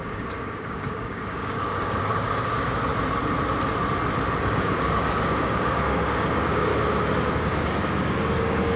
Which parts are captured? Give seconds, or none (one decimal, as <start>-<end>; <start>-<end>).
2.9-4.4; 6.7-7.3